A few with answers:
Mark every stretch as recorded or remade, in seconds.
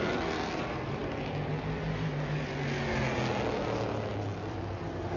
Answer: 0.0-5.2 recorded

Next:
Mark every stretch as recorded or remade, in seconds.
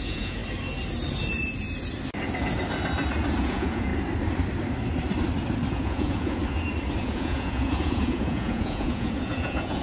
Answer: 0.0-0.4 remade; 0.4-3.4 recorded; 3.4-3.9 remade; 3.9-5.7 recorded; 5.7-6.4 remade; 6.4-7.0 recorded; 7.0-9.8 remade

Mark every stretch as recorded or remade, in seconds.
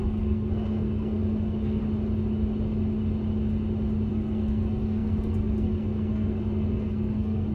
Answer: 0.0-1.8 remade; 1.8-4.1 recorded; 4.1-7.5 remade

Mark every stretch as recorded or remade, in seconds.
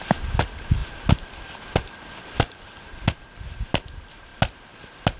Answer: 0.0-5.2 recorded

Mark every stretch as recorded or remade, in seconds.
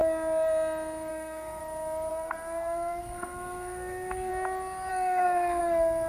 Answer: 0.0-1.1 recorded; 1.1-1.6 remade; 1.6-2.1 recorded; 2.1-4.3 remade; 4.3-4.9 recorded; 4.9-6.1 remade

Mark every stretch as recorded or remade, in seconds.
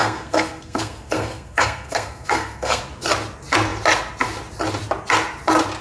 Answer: 0.0-2.8 remade; 2.8-5.8 recorded